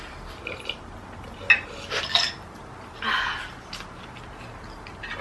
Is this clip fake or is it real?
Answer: real